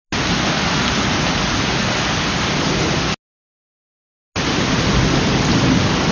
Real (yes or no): yes